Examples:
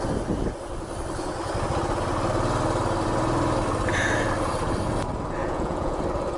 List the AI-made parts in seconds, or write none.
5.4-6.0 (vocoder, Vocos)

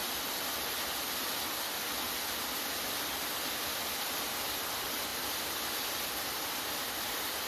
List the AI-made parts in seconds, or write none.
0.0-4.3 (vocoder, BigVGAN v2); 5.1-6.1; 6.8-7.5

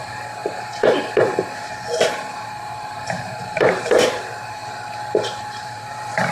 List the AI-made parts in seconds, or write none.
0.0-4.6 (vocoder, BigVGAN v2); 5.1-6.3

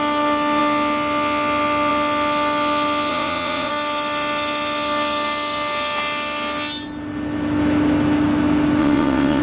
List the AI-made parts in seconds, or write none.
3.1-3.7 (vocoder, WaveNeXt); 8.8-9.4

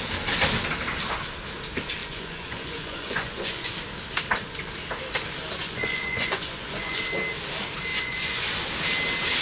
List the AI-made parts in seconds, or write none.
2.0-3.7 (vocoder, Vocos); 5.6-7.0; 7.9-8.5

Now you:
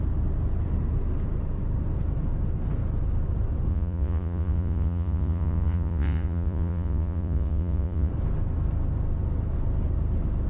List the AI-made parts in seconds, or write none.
3.7-8.1 (vocoder, Vocos)

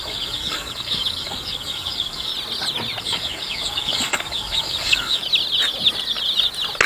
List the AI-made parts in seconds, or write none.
0.0-2.3 (codec, DAC); 3.0-5.2